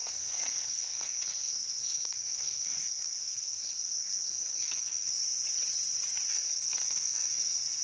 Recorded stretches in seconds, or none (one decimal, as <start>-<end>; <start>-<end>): 5.2-6.3